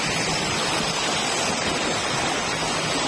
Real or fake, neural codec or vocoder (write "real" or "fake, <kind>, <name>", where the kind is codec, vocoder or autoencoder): real